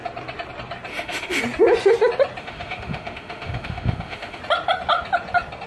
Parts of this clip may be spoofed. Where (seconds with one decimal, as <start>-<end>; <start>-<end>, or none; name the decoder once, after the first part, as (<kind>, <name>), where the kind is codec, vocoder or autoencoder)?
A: 0.9-1.4 (autoencoder, DAC-VAE); 2.4-4.4